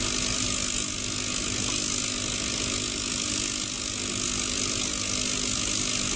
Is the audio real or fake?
real